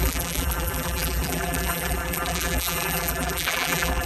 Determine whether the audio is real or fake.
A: fake